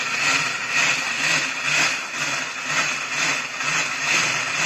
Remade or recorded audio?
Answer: recorded